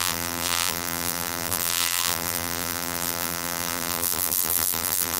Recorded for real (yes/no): no